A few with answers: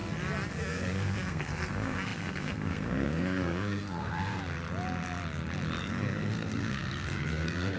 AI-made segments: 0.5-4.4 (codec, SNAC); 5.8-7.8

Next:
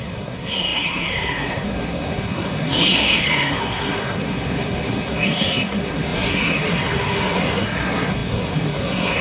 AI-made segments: 0.0-9.2 (codec, SNAC)

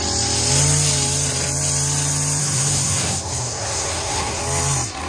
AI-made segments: 2.4-4.4 (codec, SNAC)

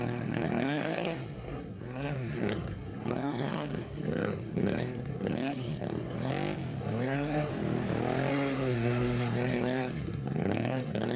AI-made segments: 0.0-6.3 (codec, SNAC); 6.8-7.5; 8.3-11.2

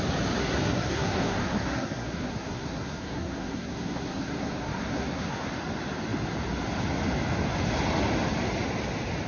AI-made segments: 0.4-5.5 (codec, SNAC)

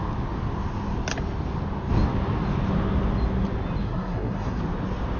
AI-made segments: 3.8-4.6 (codec, SNAC)

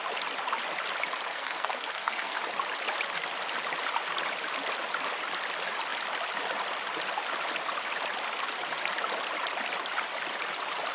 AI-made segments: 1.3-2.4 (codec, SNAC)

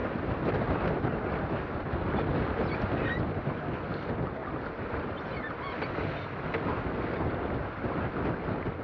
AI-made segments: none